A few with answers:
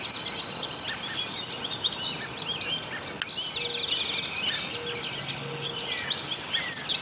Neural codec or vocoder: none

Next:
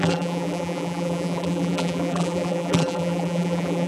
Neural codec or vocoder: vocoder, BigVGAN v2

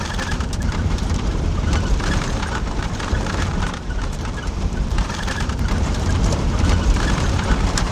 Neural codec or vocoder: vocoder, BigVGAN v2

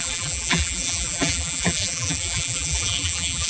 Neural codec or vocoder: vocoder, BigVGAN v2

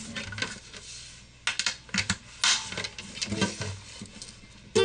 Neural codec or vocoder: none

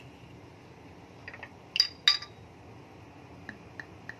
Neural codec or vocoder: none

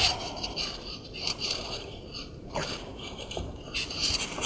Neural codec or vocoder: vocoder, BigVGAN v2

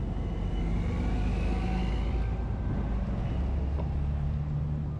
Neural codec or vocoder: none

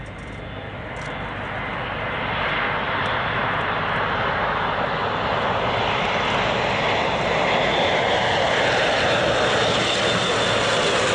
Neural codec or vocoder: none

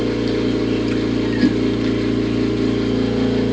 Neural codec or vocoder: none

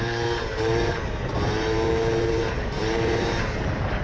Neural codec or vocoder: vocoder, BigVGAN v2